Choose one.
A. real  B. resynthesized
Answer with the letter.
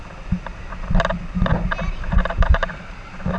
A